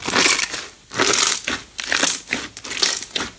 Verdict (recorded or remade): recorded